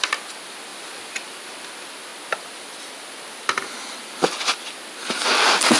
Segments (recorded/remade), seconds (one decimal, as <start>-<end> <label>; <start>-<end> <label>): 0.0-5.8 recorded